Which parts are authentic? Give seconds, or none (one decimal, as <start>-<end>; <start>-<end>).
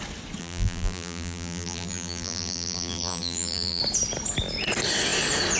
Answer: 0.0-0.4; 3.8-5.6